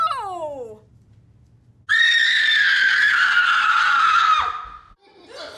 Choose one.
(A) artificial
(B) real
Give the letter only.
B